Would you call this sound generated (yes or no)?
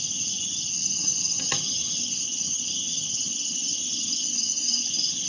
yes